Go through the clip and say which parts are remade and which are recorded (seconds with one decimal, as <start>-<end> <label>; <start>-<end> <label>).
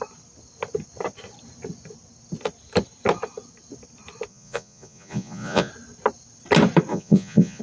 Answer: 0.0-4.3 recorded; 4.3-5.7 remade; 5.7-6.9 recorded; 6.9-7.6 remade